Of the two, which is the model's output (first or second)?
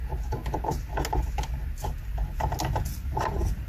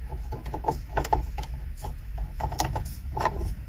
second